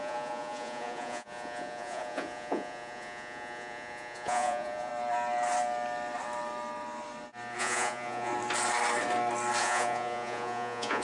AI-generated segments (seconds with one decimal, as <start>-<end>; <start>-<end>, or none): 0.0-4.9; 7.6-8.3; 9.6-11.0